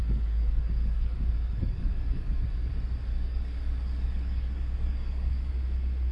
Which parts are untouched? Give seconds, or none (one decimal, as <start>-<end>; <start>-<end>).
2.7-3.1; 5.5-6.1